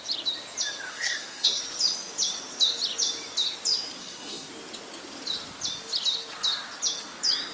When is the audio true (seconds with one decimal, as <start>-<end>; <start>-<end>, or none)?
0.0-0.9; 1.6-4.0; 4.5-7.5